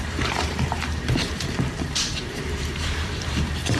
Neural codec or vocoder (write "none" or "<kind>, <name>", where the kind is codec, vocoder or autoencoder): vocoder, BigVGAN v2